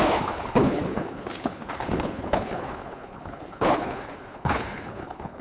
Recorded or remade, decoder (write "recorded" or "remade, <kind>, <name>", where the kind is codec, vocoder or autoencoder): remade, codec, HILCodec